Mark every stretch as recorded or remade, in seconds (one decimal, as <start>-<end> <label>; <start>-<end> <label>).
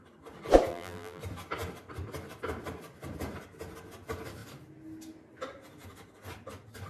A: 0.0-0.7 recorded; 0.7-1.2 remade; 1.2-6.9 recorded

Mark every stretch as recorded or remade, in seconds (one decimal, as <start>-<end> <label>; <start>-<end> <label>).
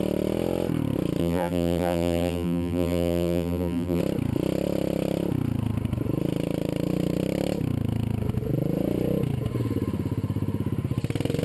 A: 0.0-1.2 recorded; 1.2-4.0 remade; 4.0-11.4 recorded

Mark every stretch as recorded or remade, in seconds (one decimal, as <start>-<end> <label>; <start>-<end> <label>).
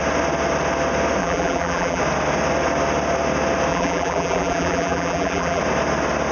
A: 0.0-1.2 recorded; 1.2-2.0 remade; 2.0-3.7 recorded; 3.7-5.6 remade; 5.6-6.3 recorded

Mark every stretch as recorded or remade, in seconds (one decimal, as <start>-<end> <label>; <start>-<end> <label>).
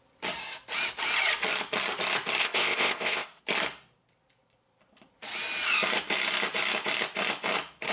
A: 0.0-2.4 recorded; 2.4-3.4 remade; 3.4-7.9 recorded